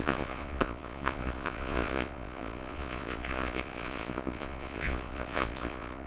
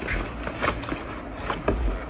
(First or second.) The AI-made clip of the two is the first